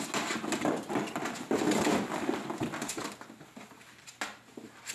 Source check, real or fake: real